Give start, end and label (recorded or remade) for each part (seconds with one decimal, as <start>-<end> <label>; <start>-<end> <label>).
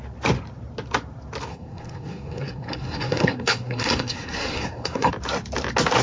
0.0-1.5 recorded; 1.5-5.1 remade; 5.1-6.0 recorded